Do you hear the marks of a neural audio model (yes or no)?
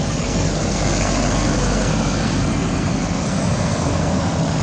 yes